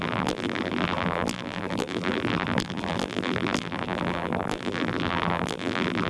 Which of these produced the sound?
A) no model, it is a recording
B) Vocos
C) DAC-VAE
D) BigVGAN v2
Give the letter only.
D